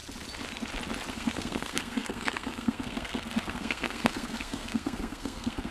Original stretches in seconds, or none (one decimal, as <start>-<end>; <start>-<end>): 0.0-1.1